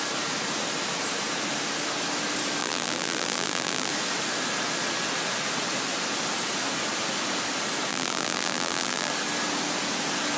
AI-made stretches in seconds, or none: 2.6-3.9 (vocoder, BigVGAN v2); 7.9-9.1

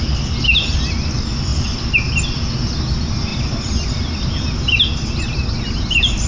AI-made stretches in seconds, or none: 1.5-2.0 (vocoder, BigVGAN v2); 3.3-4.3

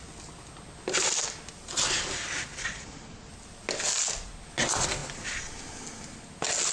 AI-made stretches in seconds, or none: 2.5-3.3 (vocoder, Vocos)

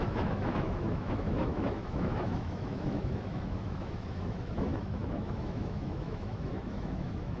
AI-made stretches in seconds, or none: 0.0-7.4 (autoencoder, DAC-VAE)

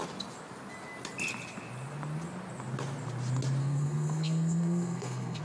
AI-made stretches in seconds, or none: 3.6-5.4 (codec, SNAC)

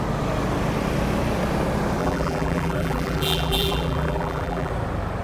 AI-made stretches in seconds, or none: 2.0-4.7 (vocoder, BigVGAN v2)